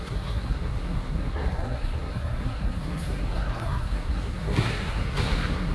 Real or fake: fake